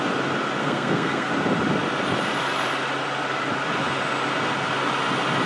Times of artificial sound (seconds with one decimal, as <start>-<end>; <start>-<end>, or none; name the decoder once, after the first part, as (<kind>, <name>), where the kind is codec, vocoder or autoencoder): 0.6-1.3 (codec, SNAC)